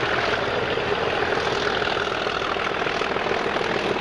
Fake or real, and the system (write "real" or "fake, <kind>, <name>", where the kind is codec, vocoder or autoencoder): real